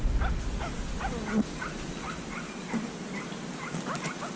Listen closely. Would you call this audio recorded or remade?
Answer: recorded